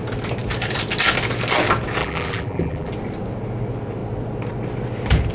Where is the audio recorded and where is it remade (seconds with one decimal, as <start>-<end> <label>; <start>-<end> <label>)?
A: 0.0-2.0 recorded; 2.0-2.9 remade; 2.9-5.3 recorded